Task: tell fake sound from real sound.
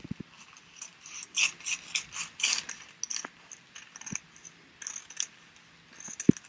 real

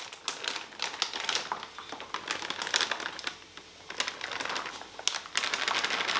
real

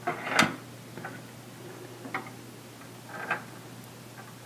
real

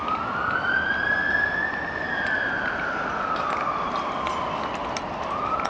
real